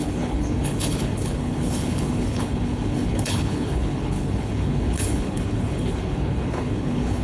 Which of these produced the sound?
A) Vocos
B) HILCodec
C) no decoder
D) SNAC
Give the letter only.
B